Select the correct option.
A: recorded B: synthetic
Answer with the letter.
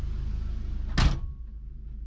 A